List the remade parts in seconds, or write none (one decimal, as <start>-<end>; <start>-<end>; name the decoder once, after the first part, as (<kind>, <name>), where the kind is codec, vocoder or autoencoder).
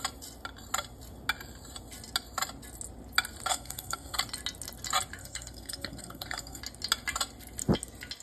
3.5-4.2 (codec, SNAC); 5.2-6.6